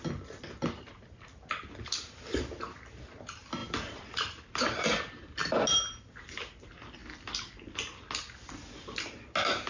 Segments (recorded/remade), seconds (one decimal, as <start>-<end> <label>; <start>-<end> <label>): 0.0-3.6 recorded; 3.6-4.9 remade; 4.9-9.7 recorded